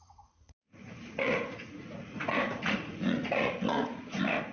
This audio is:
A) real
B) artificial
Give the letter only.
B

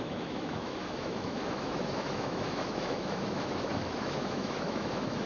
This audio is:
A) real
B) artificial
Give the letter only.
B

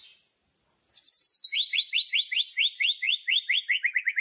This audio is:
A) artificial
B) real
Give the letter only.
B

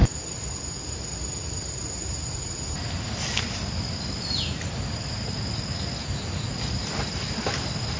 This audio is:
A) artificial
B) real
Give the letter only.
B